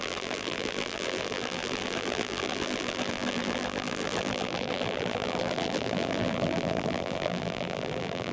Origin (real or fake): fake